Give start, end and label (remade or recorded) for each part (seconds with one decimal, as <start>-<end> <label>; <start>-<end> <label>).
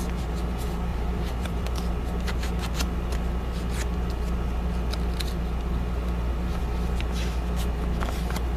0.0-0.9 recorded; 0.9-1.9 remade; 1.9-8.6 recorded